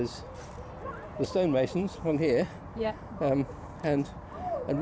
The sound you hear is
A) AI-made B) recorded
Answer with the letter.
A